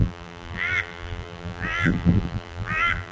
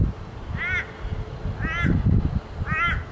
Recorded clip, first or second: second